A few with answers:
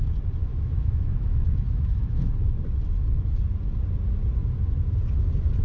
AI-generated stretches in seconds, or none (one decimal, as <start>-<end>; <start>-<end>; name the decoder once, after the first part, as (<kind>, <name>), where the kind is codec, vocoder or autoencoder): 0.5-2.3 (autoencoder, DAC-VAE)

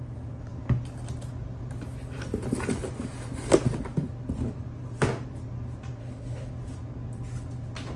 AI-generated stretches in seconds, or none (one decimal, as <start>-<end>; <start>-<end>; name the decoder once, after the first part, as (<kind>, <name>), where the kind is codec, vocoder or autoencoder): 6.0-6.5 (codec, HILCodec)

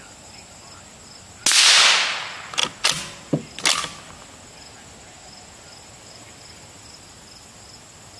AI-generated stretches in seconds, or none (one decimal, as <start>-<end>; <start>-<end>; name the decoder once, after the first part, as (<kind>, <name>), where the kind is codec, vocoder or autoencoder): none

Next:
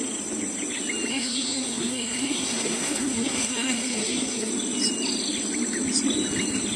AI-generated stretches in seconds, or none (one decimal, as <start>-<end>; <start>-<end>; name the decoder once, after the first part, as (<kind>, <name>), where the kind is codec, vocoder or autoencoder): 1.1-4.5 (codec, SNAC)

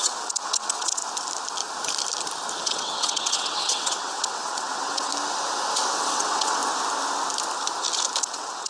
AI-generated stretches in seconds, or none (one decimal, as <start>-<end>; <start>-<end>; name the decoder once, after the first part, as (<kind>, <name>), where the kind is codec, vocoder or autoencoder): 0.0-1.0 (vocoder, WaveNeXt); 2.6-5.1; 5.9-6.6; 8.2-8.7